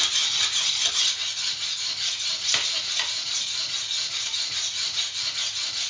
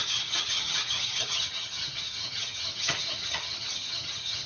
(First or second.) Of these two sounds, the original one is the first